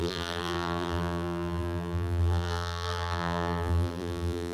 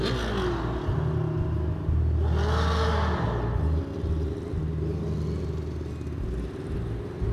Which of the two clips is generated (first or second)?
first